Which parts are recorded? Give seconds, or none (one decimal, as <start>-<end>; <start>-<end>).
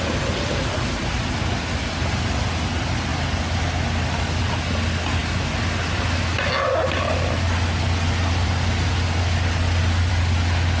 0.0-10.8